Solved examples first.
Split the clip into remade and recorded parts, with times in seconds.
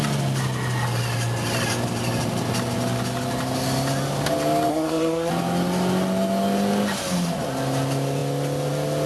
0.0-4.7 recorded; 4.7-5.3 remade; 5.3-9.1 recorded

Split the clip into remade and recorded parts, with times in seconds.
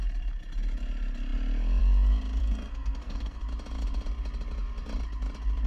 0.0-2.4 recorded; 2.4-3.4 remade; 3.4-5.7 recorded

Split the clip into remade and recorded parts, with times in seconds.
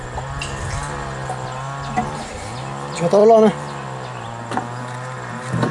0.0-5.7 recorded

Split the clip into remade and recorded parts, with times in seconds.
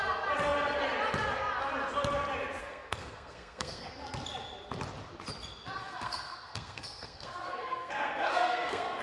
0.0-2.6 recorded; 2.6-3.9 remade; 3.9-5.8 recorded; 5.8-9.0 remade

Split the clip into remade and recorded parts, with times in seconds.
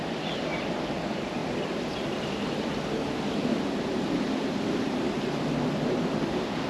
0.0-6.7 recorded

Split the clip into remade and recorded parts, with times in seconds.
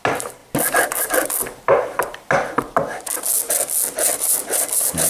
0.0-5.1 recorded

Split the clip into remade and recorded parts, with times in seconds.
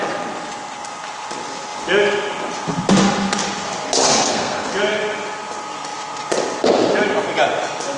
0.0-4.0 recorded; 4.0-4.7 remade; 4.7-8.0 recorded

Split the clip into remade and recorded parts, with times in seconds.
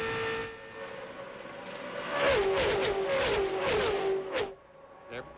0.0-5.4 recorded